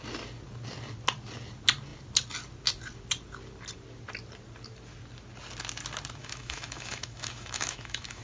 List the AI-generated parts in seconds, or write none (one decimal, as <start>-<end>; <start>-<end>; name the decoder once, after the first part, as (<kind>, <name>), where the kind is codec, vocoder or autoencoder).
6.2-8.2 (autoencoder, DAC-VAE)